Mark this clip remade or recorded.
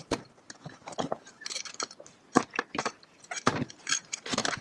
remade